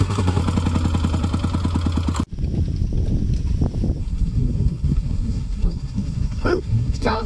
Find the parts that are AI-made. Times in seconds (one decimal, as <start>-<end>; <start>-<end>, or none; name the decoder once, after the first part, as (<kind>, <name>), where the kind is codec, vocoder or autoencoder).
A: 0.0-0.4 (codec, SNAC); 4.0-7.3